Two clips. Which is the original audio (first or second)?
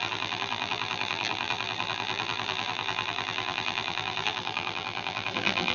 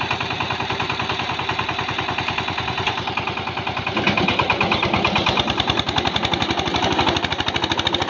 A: second